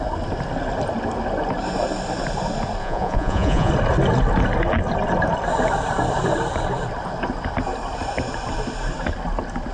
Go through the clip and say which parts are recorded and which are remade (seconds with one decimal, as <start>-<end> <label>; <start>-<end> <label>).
0.0-2.8 recorded; 2.8-3.7 remade; 3.7-9.7 recorded